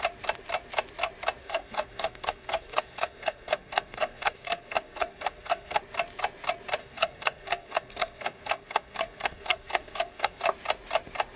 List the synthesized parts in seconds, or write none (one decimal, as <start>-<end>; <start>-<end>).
1.4-5.8; 6.8-10.4